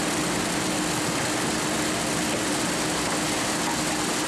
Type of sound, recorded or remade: recorded